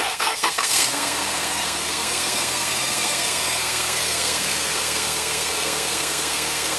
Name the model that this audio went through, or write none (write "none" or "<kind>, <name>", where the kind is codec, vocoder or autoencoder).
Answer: codec, SNAC